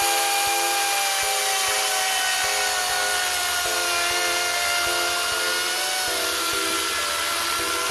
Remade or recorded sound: recorded